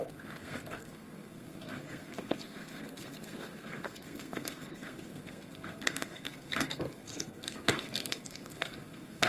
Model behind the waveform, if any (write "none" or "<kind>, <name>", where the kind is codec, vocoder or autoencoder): codec, SNAC